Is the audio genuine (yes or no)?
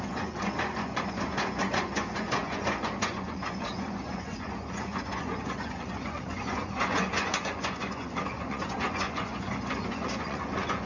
no